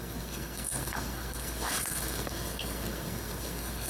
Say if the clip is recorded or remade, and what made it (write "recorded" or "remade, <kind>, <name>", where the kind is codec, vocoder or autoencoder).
remade, codec, SNAC